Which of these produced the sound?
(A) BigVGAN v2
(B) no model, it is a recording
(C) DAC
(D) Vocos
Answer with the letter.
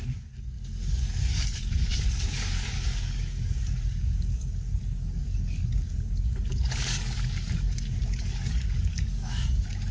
C